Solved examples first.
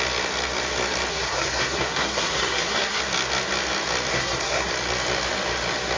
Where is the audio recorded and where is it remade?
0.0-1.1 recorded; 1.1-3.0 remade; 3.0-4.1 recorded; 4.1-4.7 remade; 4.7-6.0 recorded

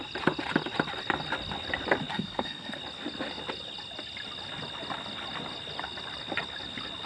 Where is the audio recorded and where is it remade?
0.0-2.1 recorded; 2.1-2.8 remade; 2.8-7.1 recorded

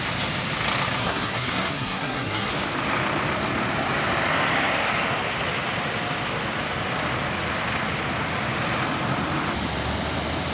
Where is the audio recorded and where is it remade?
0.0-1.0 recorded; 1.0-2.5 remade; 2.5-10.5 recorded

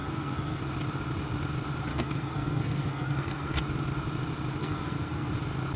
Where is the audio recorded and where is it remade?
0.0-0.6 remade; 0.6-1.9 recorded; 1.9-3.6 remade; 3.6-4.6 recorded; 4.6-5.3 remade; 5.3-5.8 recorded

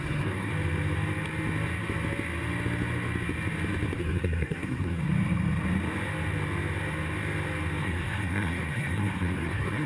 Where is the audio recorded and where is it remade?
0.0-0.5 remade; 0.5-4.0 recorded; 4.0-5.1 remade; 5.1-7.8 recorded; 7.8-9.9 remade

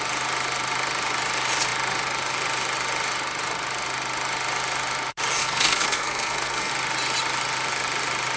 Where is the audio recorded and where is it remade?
0.0-5.4 recorded; 5.4-6.7 remade; 6.7-8.4 recorded

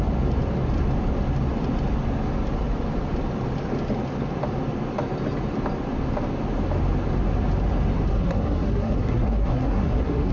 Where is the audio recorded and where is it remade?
0.0-8.1 recorded; 8.1-10.3 remade